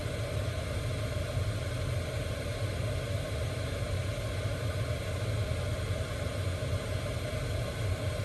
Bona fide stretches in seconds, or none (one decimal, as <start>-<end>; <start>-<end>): 0.0-8.2